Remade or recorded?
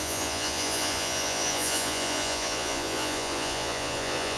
remade